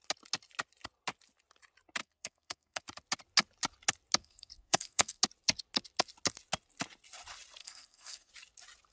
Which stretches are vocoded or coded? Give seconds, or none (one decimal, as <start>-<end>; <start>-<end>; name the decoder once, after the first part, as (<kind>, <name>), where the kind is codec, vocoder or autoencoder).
2.0-2.8 (codec, SNAC); 4.2-5.2; 7.6-8.3